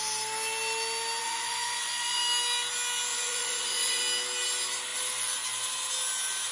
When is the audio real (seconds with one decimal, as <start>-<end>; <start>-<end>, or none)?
0.0-1.2; 2.2-3.1; 4.0-6.5